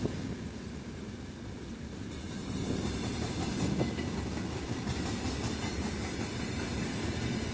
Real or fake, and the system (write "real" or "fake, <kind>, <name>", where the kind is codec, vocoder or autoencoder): real